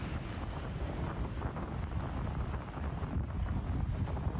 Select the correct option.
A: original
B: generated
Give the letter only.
A